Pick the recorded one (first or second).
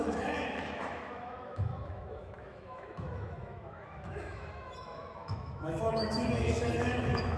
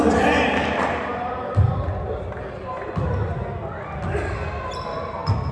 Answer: second